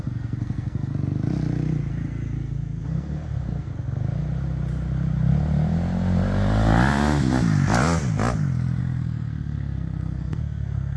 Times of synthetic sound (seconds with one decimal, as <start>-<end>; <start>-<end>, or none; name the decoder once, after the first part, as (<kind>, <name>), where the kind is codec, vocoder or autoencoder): 0.0-0.9 (codec, SNAC); 1.9-3.7; 8.8-11.0